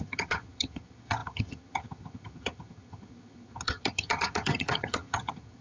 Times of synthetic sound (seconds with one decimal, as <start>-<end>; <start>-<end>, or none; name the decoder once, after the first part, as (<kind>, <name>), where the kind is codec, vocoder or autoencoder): 0.0-5.6 (vocoder, HiFi-GAN)